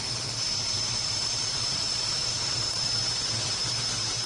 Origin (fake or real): fake